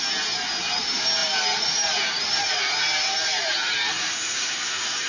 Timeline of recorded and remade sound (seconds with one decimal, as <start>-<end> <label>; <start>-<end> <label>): 0.0-5.1 recorded